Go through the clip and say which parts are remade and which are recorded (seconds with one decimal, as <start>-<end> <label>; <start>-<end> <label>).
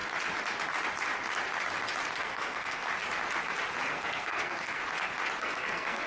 0.0-2.2 recorded; 2.2-2.9 remade; 2.9-3.9 recorded; 3.9-4.8 remade; 4.8-5.4 recorded; 5.4-6.1 remade